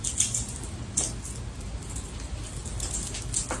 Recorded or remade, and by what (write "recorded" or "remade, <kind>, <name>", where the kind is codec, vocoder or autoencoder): recorded